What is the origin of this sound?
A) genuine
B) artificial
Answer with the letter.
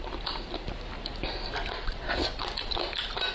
A